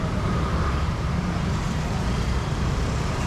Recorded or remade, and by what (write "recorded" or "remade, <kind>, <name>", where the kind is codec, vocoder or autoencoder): remade, vocoder, BigVGAN v2